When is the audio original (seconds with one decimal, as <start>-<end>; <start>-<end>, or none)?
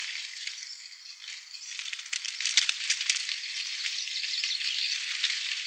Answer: 3.4-3.8